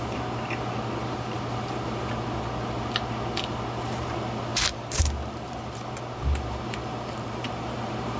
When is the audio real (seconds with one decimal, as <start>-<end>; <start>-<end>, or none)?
0.0-1.0; 2.1-4.5